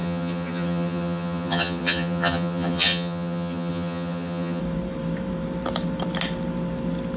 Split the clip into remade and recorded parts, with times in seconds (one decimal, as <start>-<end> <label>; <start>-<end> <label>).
0.0-4.6 remade; 4.6-7.2 recorded

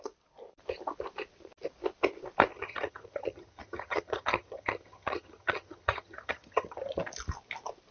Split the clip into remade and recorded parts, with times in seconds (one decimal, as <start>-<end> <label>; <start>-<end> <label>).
0.0-2.5 recorded; 2.5-7.0 remade; 7.0-7.9 recorded

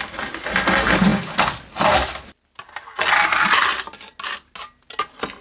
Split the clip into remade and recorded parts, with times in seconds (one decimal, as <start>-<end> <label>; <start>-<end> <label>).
0.0-5.4 recorded

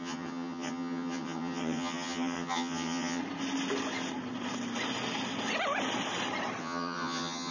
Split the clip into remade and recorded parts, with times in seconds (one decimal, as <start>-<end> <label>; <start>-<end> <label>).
0.0-3.2 remade; 3.2-6.6 recorded; 6.6-7.5 remade

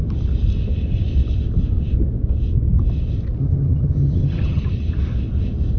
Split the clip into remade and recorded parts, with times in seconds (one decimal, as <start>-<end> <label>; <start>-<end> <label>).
0.0-3.4 recorded; 3.4-4.6 remade; 4.6-5.8 recorded

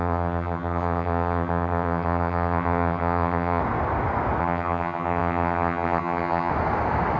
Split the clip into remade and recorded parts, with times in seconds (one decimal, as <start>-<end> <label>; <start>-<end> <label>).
0.0-3.6 remade; 3.6-4.4 recorded; 4.4-6.5 remade; 6.5-7.2 recorded